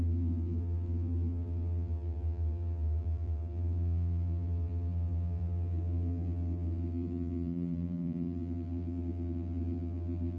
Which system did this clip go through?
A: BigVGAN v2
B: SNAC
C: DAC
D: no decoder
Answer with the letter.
A